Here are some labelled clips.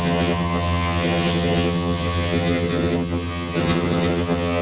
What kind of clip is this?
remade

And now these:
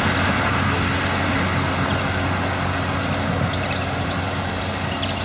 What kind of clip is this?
recorded